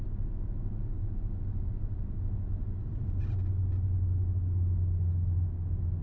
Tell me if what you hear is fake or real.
real